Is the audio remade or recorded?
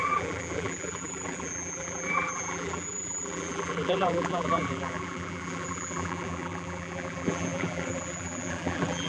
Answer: remade